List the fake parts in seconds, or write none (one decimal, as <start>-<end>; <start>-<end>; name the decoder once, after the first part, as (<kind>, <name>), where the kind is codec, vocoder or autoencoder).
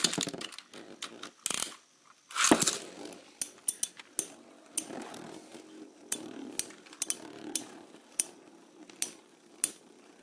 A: none